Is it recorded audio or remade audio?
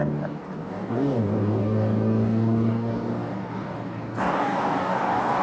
remade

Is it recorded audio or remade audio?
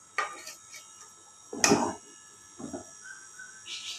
recorded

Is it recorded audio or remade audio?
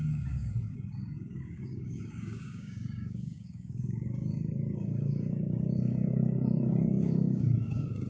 remade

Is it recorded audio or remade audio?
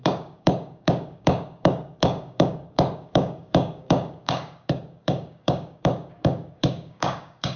remade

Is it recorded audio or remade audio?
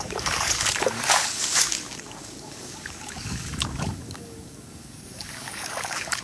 remade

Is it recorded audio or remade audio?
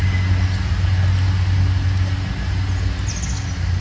recorded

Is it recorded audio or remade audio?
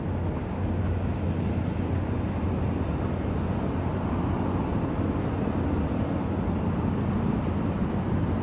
recorded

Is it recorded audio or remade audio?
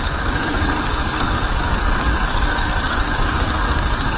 remade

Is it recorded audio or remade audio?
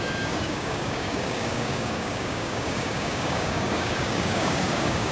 remade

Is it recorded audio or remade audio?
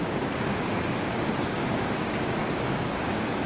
remade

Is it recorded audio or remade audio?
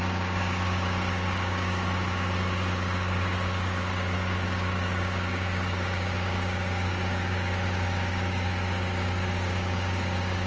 remade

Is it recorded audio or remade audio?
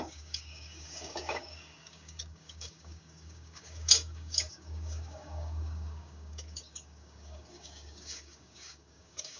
remade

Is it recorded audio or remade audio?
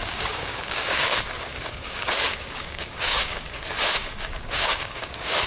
remade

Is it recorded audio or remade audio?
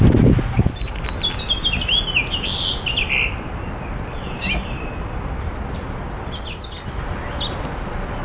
recorded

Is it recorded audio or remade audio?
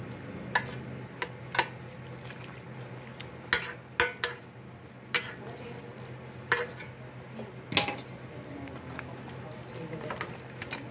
recorded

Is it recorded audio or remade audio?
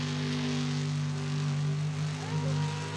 recorded